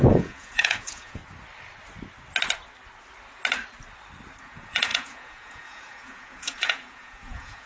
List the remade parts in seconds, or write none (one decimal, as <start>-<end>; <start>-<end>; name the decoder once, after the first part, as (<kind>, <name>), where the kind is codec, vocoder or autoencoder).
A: 0.0-1.2 (vocoder, Vocos); 4.4-7.7